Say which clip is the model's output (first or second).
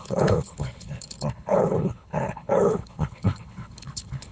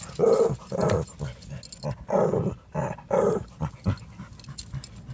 first